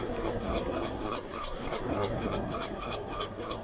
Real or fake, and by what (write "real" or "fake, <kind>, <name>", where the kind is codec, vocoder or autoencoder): fake, codec, SNAC